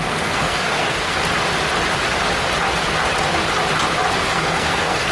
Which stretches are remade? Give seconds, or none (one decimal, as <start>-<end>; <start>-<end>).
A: 0.0-1.2; 4.3-5.1